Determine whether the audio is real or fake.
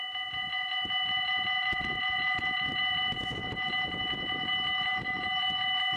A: real